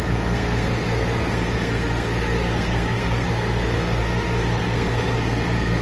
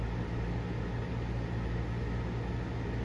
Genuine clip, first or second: second